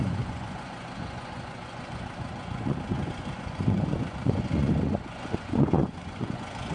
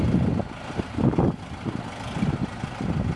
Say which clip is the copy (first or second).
first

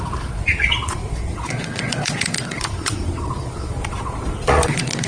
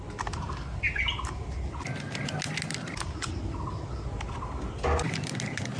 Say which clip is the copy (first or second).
first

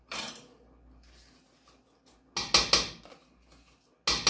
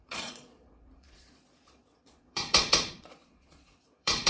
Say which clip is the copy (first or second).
second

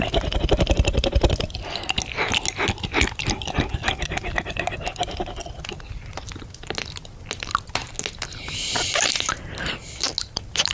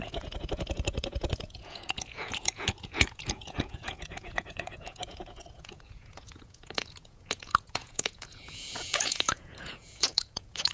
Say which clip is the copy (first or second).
second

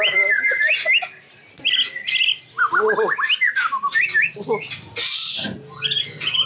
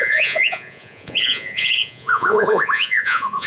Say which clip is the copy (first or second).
second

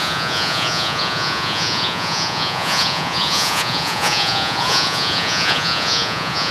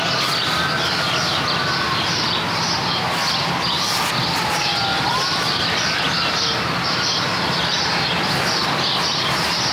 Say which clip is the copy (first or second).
first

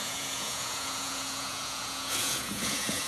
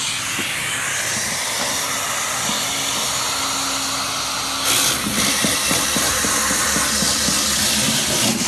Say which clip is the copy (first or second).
first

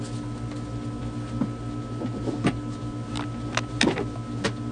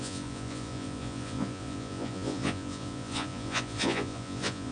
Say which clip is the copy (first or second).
second